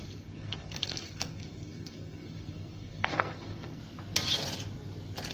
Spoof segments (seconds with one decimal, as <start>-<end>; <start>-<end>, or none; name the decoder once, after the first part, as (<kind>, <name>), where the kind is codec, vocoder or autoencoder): 0.0-3.8 (codec, SNAC)